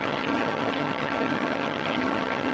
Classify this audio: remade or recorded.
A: remade